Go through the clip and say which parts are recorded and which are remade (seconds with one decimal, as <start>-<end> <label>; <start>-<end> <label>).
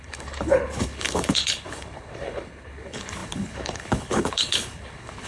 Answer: 0.0-5.3 remade